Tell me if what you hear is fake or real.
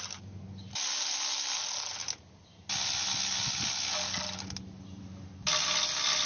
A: real